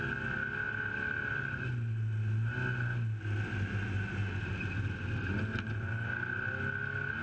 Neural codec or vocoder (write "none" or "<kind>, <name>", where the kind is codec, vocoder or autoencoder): none